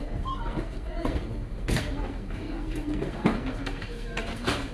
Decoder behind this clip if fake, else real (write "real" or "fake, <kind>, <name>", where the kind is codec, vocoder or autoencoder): fake, codec, SNAC